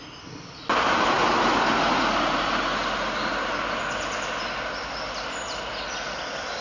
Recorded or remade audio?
recorded